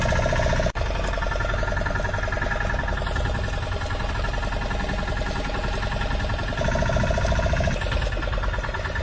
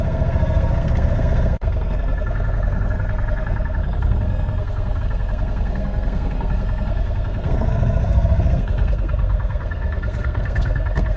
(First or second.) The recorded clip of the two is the first